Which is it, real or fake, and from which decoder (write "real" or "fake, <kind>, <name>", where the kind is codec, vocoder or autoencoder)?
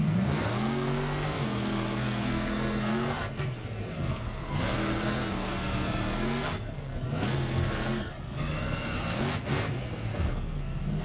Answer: fake, codec, SNAC